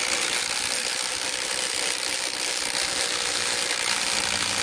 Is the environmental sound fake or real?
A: real